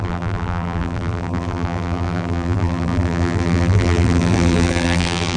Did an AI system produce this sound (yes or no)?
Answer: yes